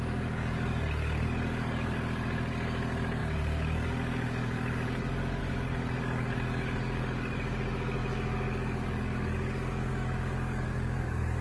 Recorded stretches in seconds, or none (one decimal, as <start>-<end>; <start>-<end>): none

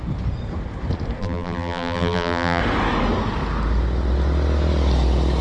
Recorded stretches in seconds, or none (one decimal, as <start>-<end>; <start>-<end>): 0.0-1.2; 2.6-5.4

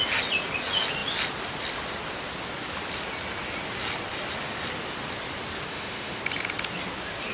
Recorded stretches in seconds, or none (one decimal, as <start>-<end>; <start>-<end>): 0.0-5.7; 6.2-7.3

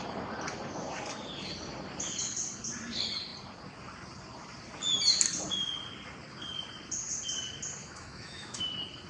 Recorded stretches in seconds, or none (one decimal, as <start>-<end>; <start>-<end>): 0.0-7.8; 8.6-9.1

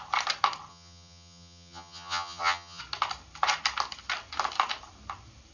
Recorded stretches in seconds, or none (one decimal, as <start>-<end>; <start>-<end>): 0.0-0.7; 2.8-5.5

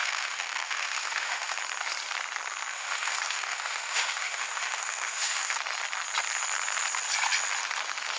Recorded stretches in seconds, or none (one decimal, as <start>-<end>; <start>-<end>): 1.6-2.7; 5.6-8.2

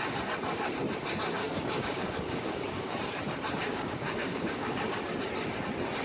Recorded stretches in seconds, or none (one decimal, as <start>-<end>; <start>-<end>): 0.0-1.4; 3.0-3.6; 5.0-6.0

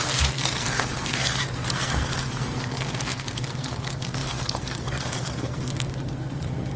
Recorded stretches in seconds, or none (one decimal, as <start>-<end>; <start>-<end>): none